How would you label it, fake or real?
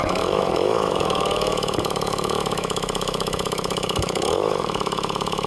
fake